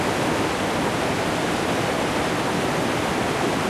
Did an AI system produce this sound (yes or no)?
no